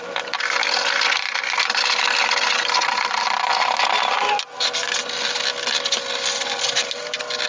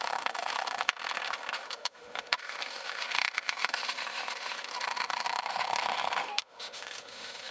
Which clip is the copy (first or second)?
second